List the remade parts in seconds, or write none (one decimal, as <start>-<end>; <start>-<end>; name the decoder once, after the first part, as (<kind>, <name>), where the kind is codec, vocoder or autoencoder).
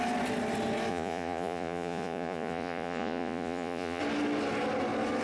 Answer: 0.9-4.0 (vocoder, Vocos)